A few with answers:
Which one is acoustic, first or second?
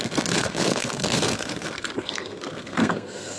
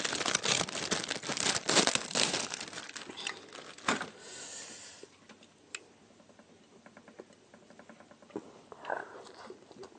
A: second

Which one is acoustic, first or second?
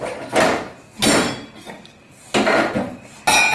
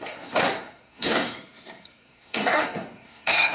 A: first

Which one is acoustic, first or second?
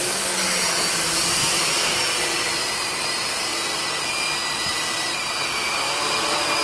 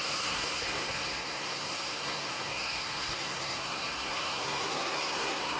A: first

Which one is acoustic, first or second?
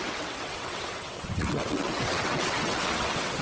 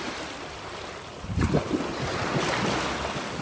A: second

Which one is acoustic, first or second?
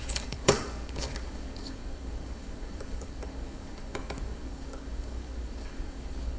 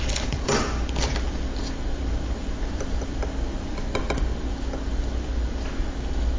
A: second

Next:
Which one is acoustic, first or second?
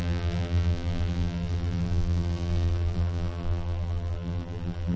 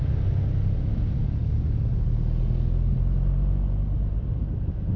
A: second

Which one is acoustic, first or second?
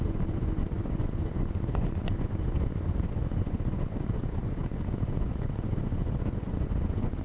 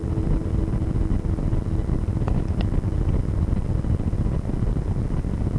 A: second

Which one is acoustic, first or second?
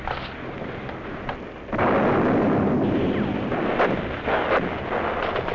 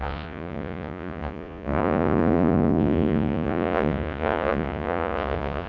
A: first